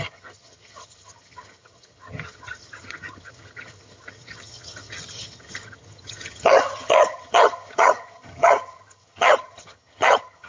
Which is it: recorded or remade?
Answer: remade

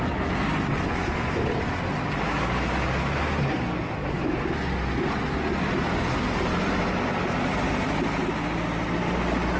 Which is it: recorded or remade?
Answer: recorded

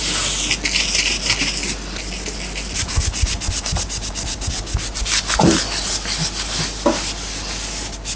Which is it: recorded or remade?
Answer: recorded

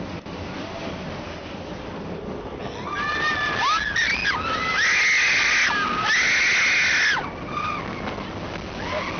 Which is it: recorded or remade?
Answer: recorded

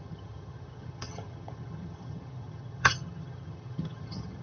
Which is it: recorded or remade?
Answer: remade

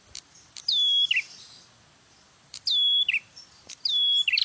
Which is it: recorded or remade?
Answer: recorded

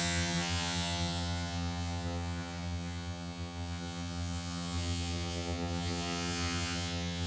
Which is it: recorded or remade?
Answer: remade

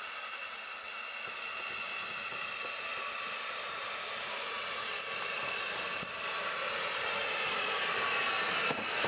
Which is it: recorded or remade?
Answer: recorded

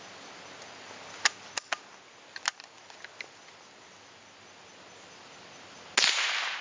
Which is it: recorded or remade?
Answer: recorded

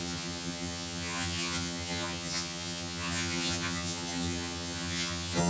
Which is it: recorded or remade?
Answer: remade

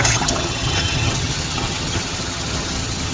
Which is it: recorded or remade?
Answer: remade